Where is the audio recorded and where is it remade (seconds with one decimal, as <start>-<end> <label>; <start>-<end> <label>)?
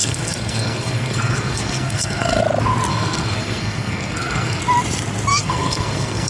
0.0-2.4 remade; 2.4-2.9 recorded; 2.9-4.6 remade; 4.6-5.3 recorded; 5.3-6.3 remade